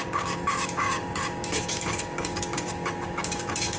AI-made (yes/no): yes